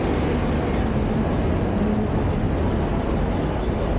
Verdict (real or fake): real